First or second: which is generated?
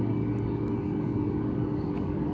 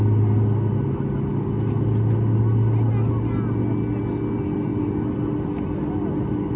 first